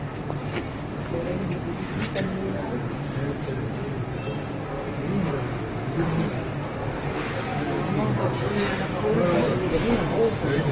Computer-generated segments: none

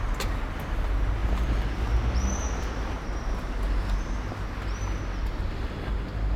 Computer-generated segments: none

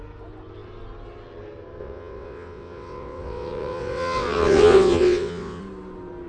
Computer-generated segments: 1.8-5.6 (vocoder, WaveNeXt)

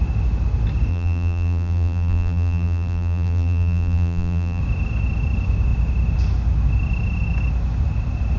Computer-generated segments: 0.9-4.6 (vocoder, BigVGAN v2)

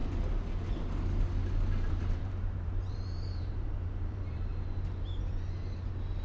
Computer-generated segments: 1.9-4.5 (vocoder, BigVGAN v2)

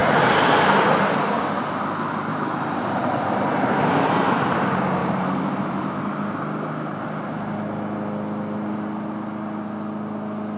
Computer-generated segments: 0.0-1.6 (vocoder, BigVGAN v2); 2.3-3.8; 5.0-6.0

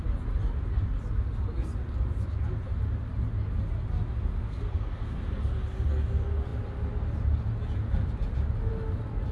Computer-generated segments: 4.3-5.2 (codec, SNAC)